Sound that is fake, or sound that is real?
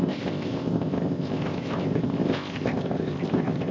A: fake